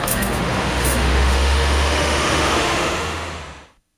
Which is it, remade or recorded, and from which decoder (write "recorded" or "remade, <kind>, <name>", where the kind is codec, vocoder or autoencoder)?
remade, autoencoder, DAC-VAE